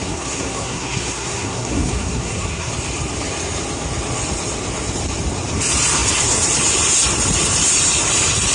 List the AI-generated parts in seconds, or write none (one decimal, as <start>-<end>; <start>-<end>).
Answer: 0.0-2.7